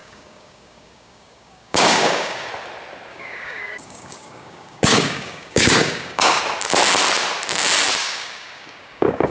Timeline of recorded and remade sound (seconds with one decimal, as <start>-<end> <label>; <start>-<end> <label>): 0.0-2.5 remade; 2.5-3.1 recorded; 3.1-6.4 remade; 6.4-8.0 recorded; 8.0-9.3 remade